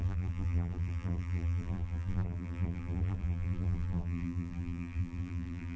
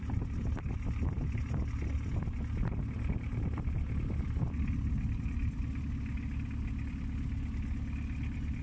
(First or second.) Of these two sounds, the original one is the second